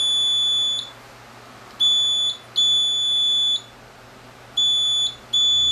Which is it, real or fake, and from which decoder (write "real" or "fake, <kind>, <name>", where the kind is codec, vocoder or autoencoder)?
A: real